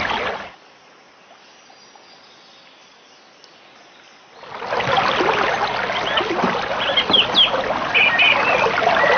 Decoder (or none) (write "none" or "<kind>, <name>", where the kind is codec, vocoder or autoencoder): none